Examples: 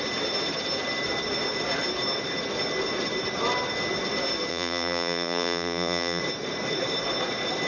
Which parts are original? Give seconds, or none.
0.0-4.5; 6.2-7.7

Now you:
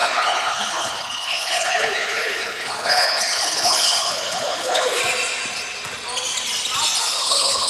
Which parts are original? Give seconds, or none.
5.0-7.0

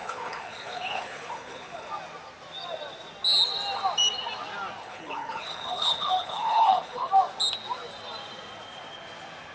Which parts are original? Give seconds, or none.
1.9-4.8; 7.1-9.5

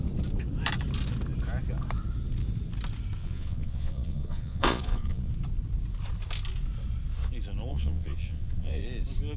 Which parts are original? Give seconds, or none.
0.0-3.2; 5.3-7.7; 8.8-9.4

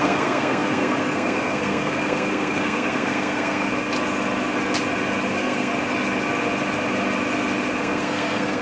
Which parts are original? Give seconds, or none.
3.7-5.3; 5.7-7.8

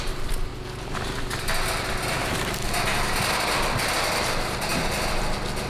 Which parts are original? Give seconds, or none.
0.5-3.9; 4.7-5.7